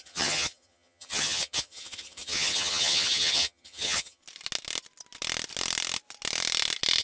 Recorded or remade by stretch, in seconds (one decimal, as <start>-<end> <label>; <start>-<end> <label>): 0.0-4.2 remade; 4.2-7.0 recorded